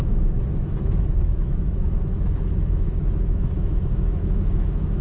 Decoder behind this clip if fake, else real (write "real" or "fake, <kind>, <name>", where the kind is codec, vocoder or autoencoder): fake, autoencoder, DAC-VAE